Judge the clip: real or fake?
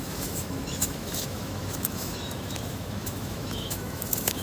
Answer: fake